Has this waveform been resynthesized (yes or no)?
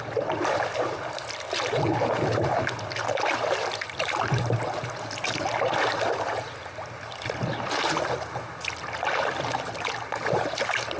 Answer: no